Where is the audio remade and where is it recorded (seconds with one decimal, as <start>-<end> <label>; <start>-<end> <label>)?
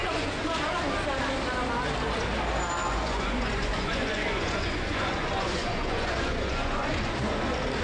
0.0-0.5 remade; 0.5-2.8 recorded; 2.8-7.1 remade; 7.1-7.8 recorded